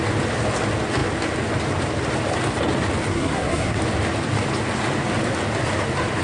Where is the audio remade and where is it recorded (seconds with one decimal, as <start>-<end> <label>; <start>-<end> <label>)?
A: 0.0-3.1 recorded; 3.1-3.8 remade; 3.8-6.2 recorded